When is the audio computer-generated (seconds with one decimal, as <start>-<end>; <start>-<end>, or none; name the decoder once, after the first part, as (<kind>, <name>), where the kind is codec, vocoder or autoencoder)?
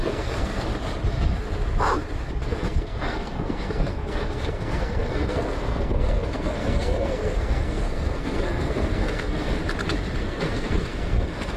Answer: 0.0-0.7 (codec, SNAC); 2.4-9.6; 10.2-11.6